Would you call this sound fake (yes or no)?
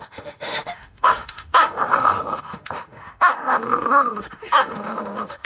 yes